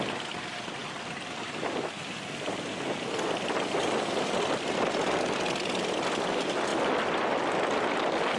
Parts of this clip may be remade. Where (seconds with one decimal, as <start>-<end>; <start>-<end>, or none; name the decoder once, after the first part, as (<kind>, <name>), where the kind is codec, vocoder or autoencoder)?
none